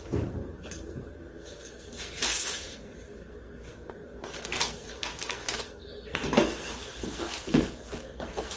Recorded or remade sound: remade